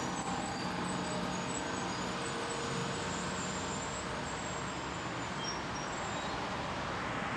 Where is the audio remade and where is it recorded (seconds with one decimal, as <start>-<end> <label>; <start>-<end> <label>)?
0.0-7.4 recorded